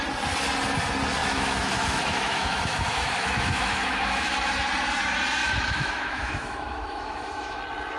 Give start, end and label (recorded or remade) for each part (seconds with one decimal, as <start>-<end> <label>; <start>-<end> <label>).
0.0-1.2 recorded; 1.2-4.3 remade; 4.3-5.4 recorded; 5.4-7.6 remade; 7.6-8.0 recorded